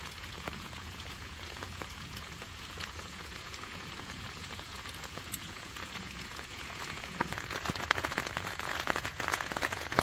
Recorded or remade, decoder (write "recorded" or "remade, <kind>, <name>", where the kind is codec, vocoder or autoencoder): remade, vocoder, Vocos